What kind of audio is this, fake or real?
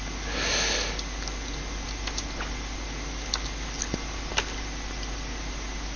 real